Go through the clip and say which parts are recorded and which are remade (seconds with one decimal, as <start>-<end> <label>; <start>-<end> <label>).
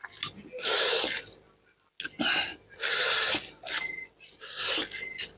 0.0-5.4 recorded